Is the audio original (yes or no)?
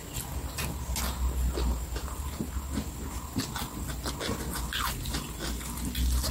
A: yes